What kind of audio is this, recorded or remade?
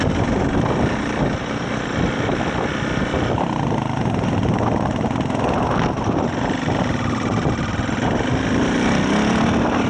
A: recorded